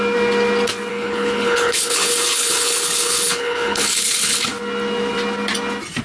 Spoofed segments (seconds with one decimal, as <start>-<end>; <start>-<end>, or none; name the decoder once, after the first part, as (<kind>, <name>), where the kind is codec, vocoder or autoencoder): 0.9-4.5 (codec, HILCodec)